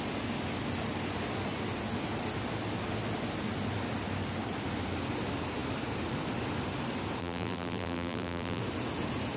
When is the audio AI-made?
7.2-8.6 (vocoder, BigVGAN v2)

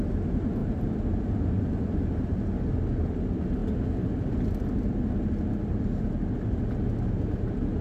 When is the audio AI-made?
none